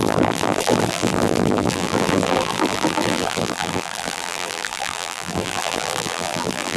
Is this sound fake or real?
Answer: fake